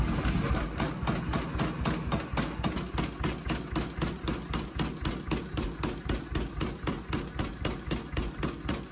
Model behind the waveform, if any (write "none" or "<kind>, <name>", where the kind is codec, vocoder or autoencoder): none